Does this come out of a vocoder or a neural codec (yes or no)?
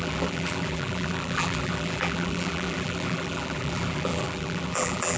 yes